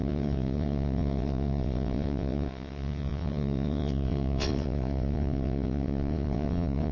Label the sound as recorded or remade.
remade